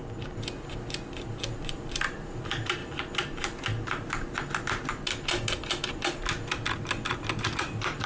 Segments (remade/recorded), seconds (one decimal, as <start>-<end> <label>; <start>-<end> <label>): 0.0-1.5 recorded; 1.5-2.8 remade; 2.8-7.4 recorded; 7.4-8.1 remade